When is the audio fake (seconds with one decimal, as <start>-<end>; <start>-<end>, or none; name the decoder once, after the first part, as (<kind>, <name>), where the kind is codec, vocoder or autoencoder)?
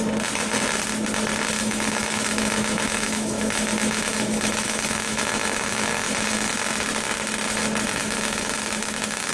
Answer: 1.6-6.5 (autoencoder, DAC-VAE); 7.9-9.3